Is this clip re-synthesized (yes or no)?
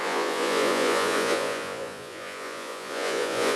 yes